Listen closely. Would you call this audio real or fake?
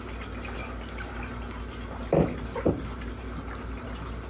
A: real